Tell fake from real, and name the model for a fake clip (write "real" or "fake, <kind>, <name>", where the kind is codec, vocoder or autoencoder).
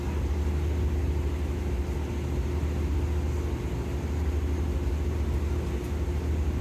real